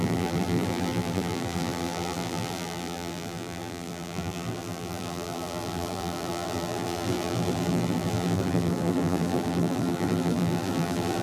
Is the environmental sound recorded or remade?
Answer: remade